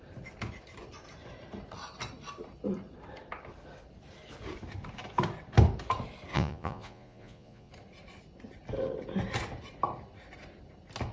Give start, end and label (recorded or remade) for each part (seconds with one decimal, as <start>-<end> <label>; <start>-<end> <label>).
0.0-6.3 recorded; 6.3-7.7 remade; 7.7-11.1 recorded